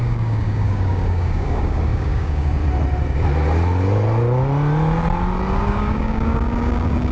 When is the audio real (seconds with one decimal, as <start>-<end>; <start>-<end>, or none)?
2.6-5.6